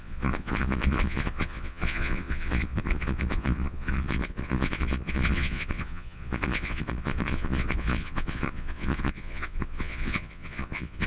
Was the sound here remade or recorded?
remade